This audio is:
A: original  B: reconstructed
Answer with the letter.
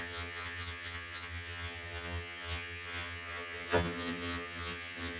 B